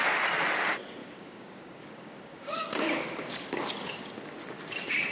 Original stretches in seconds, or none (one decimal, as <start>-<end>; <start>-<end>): 0.0-1.0; 4.1-5.1